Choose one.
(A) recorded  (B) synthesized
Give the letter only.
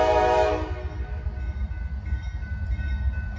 A